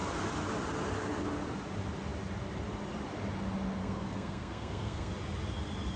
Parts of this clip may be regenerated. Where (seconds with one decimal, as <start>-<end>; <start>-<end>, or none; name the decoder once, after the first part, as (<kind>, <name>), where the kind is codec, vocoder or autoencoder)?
3.8-5.1 (codec, SNAC)